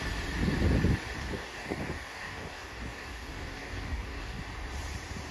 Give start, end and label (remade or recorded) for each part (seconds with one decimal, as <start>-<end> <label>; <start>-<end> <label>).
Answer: 0.0-1.2 recorded; 1.2-4.4 remade; 4.4-5.3 recorded